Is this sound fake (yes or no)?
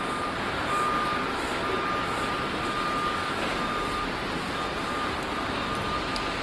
no